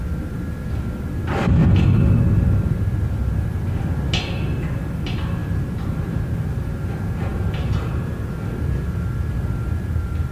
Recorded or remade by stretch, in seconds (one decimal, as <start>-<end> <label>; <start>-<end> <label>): 0.0-5.4 recorded; 5.4-5.9 remade; 5.9-7.3 recorded; 7.3-10.3 remade